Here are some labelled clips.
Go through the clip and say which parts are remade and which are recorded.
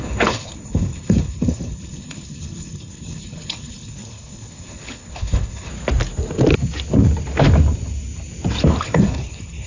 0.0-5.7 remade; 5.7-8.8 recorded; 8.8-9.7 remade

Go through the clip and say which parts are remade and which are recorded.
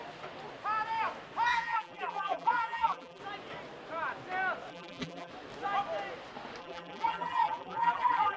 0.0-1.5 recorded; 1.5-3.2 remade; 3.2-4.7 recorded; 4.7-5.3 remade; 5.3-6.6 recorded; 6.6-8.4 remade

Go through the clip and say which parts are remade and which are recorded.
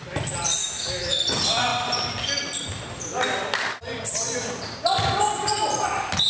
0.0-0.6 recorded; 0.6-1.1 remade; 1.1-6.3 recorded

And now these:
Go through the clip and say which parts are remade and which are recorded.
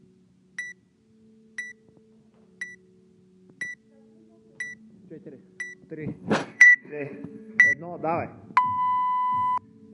0.0-6.1 recorded; 6.1-7.5 remade; 7.5-9.9 recorded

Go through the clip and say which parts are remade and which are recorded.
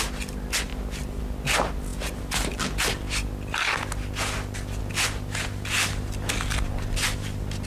0.0-7.7 recorded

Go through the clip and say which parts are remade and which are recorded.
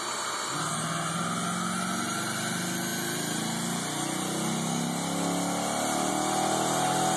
0.0-7.2 recorded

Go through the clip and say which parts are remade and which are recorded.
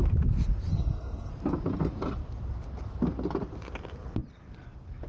0.0-0.7 recorded; 0.7-1.3 remade; 1.3-5.1 recorded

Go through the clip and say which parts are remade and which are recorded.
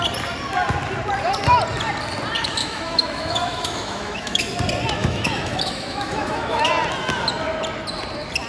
0.0-2.6 recorded; 2.6-4.5 remade; 4.5-5.0 recorded; 5.0-6.7 remade; 6.7-8.5 recorded